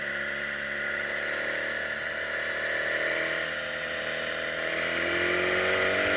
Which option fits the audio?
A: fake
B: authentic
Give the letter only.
B